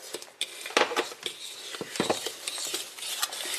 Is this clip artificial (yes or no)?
no